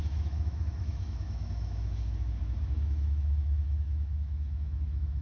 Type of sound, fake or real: fake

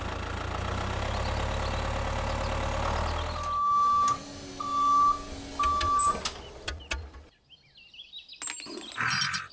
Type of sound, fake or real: real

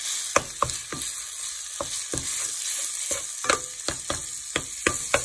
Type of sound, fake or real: real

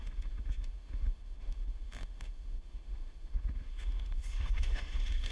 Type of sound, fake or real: fake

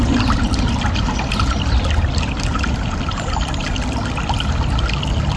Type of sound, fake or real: real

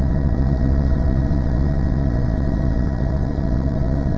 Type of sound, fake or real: fake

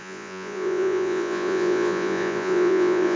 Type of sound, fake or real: fake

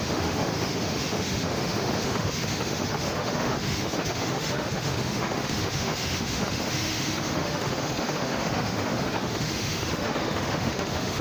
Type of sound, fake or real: fake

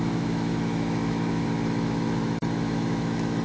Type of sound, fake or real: fake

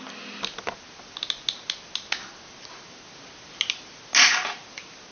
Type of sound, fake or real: real